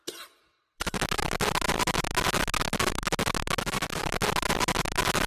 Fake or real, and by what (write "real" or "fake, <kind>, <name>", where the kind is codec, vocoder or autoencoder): real